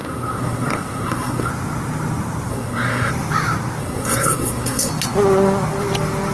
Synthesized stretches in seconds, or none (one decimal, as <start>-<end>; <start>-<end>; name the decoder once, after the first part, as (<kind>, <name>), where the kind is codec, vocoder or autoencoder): 0.0-1.5 (codec, SNAC); 2.5-3.1; 3.8-4.9